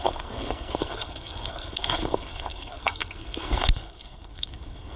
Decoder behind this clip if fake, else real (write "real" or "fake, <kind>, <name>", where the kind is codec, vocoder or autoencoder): fake, codec, SNAC